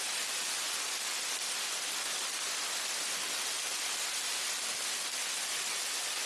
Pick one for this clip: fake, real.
real